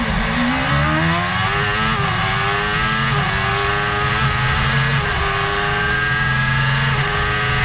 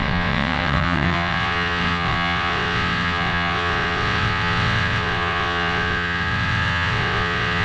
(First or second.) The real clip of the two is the first